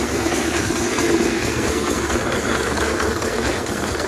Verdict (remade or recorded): remade